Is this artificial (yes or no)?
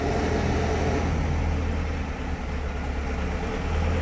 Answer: no